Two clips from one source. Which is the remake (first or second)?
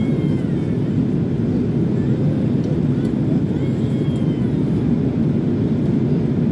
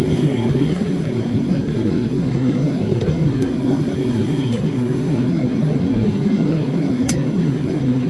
second